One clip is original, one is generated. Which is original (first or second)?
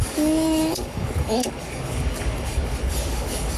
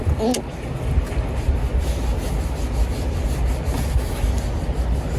second